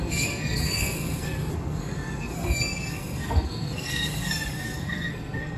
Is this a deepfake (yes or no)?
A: yes